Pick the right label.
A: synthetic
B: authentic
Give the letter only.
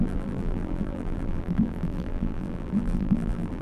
A